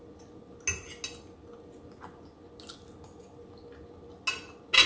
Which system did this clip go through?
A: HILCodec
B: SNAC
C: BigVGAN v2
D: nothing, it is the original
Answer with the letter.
D